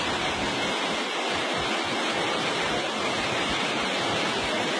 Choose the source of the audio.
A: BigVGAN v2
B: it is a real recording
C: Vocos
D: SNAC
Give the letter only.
B